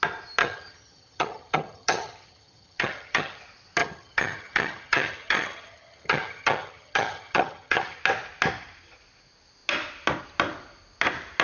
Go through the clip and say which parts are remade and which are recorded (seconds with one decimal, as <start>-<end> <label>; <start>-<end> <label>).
0.0-0.4 recorded; 0.4-3.4 remade; 3.4-3.8 recorded; 3.8-8.0 remade; 8.0-11.4 recorded